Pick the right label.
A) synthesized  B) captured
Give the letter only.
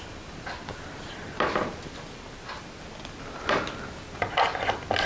B